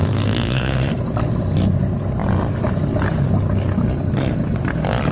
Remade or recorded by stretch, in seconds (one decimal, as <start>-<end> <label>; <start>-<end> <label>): 0.0-0.9 remade; 0.9-5.1 recorded